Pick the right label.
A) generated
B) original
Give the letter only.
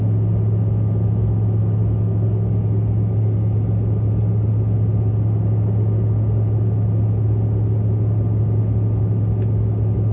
B